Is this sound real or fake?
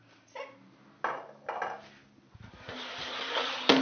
real